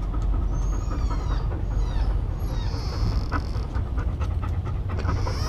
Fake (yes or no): no